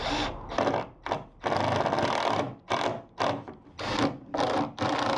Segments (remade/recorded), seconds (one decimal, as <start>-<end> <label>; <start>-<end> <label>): 0.0-5.2 recorded